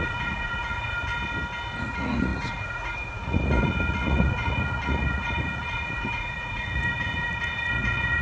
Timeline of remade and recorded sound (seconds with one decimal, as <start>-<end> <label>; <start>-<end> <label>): 0.0-1.1 remade; 1.1-1.8 recorded; 1.8-8.2 remade